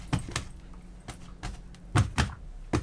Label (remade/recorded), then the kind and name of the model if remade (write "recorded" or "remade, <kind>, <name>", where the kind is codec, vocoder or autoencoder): recorded